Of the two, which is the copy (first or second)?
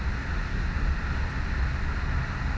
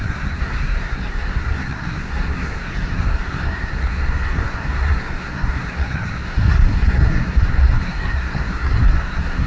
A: second